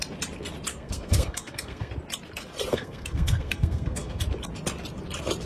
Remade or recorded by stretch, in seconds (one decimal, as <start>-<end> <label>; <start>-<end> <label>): 0.0-0.7 recorded; 0.7-1.9 remade; 1.9-2.7 recorded; 2.7-4.2 remade; 4.2-5.5 recorded